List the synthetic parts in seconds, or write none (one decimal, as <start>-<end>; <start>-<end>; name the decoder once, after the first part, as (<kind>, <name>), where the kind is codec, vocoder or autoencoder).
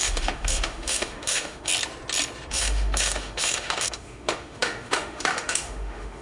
0.0-1.7 (autoencoder, DAC-VAE); 2.5-6.2